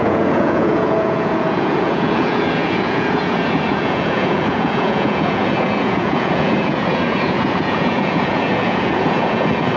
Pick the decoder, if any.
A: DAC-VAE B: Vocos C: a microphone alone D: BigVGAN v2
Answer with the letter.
B